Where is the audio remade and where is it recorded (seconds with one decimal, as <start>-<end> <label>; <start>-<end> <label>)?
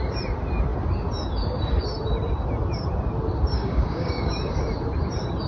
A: 0.0-3.6 recorded; 3.6-4.5 remade; 4.5-5.5 recorded